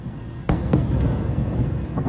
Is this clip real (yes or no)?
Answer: no